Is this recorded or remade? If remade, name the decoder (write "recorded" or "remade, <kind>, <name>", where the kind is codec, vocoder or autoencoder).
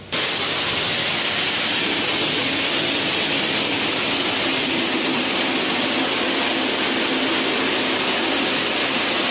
recorded